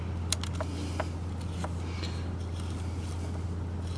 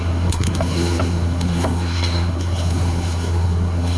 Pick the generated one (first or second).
second